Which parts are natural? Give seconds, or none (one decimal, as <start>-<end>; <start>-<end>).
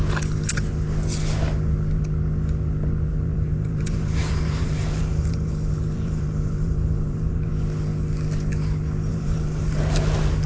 0.0-3.1; 7.5-9.1; 9.8-10.5